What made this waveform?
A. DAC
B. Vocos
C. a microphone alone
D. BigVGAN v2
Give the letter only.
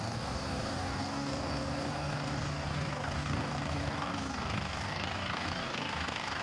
A